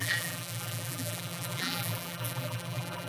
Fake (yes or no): yes